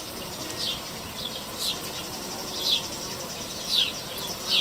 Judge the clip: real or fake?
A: real